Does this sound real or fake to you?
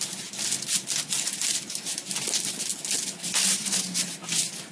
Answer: real